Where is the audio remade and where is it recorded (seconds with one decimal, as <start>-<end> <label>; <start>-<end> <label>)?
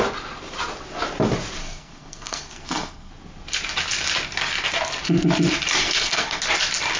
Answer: 0.0-1.6 recorded; 1.6-3.1 remade; 3.1-5.8 recorded; 5.8-6.4 remade; 6.4-7.0 recorded